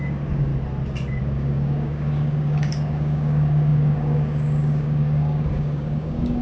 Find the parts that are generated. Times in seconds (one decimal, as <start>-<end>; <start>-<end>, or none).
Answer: 0.0-0.5; 1.2-6.4